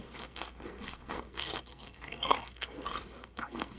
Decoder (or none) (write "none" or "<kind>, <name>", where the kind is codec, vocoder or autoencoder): codec, SNAC